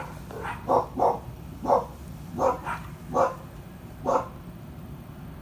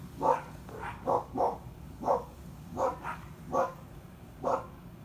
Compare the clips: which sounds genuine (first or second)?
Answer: first